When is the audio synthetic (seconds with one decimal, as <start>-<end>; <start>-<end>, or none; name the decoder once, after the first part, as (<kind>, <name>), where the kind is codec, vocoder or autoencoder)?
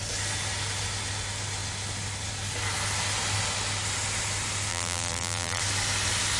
4.7-5.6 (vocoder, BigVGAN v2)